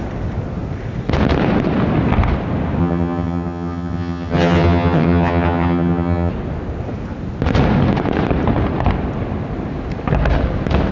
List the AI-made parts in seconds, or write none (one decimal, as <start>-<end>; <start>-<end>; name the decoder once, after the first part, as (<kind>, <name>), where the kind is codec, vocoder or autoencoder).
2.8-6.3 (vocoder, HiFi-GAN)